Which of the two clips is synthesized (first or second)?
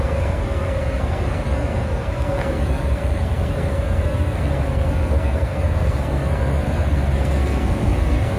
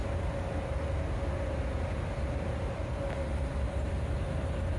first